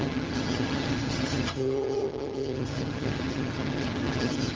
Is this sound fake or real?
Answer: fake